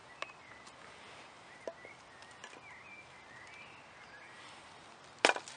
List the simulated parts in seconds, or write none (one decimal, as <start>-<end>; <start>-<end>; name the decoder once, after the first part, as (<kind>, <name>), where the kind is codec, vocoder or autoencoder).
none